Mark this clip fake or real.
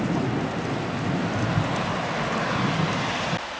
real